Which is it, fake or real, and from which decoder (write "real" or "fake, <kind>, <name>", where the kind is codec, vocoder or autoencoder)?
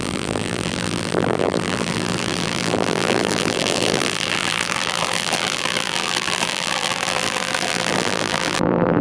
fake, vocoder, BigVGAN v2